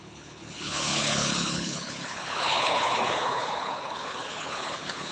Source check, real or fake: fake